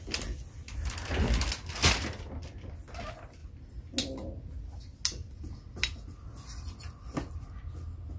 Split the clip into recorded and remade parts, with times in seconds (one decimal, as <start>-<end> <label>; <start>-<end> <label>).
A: 0.0-8.2 recorded

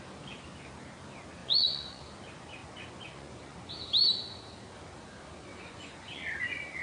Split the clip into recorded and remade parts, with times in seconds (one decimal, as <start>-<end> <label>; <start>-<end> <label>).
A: 0.0-1.4 recorded; 1.4-2.0 remade; 2.0-2.6 recorded; 2.6-3.7 remade; 3.7-5.5 recorded; 5.5-6.8 remade

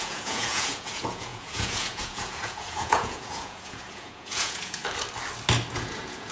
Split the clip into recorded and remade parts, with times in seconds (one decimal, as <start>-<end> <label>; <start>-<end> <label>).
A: 0.0-4.8 remade; 4.8-5.7 recorded; 5.7-6.3 remade

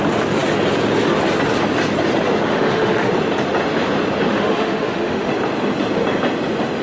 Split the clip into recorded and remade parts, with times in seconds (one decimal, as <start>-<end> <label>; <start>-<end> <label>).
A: 0.0-2.5 recorded; 2.5-3.1 remade; 3.1-4.3 recorded; 4.3-5.3 remade; 5.3-6.8 recorded

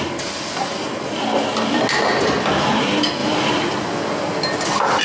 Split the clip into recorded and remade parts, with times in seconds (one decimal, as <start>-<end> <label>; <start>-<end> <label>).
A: 0.0-5.0 recorded

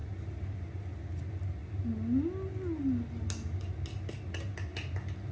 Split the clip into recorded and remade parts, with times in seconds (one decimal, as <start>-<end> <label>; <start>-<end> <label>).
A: 0.0-5.3 recorded

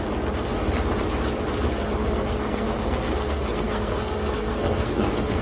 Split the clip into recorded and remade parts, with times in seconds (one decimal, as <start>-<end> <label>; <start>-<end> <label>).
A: 0.0-2.0 recorded; 2.0-5.4 remade

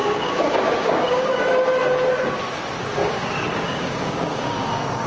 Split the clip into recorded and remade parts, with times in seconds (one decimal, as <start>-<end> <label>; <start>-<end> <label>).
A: 0.0-1.3 remade; 1.3-3.0 recorded; 3.0-5.1 remade